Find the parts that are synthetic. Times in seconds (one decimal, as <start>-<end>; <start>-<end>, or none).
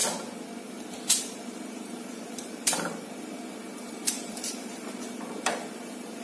1.2-6.2